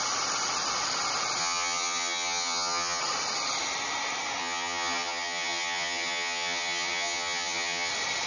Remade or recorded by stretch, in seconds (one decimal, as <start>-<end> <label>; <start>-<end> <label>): 0.0-1.4 recorded; 1.4-3.0 remade; 3.0-4.4 recorded; 4.4-7.9 remade; 7.9-8.3 recorded